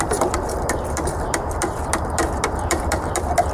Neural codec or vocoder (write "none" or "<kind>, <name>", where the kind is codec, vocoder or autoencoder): vocoder, BigVGAN v2